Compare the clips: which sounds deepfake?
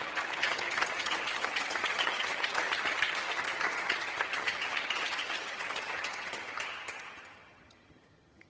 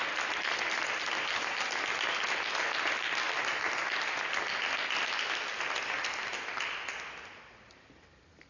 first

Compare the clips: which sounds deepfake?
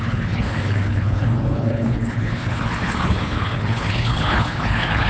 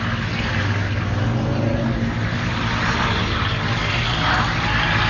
first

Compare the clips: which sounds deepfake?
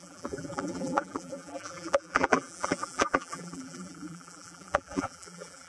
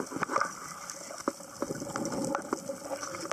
first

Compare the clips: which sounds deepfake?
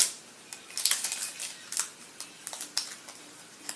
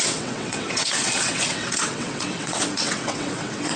second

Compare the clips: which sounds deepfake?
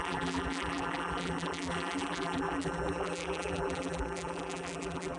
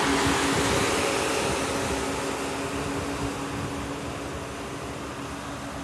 first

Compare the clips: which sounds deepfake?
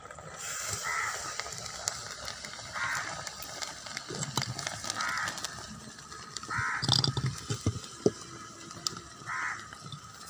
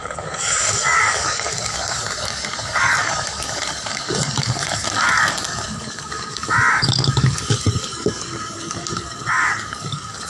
second